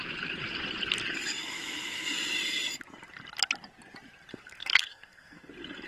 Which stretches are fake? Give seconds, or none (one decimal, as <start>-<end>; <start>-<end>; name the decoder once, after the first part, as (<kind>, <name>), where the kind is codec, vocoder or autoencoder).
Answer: 4.3-5.5 (codec, SNAC)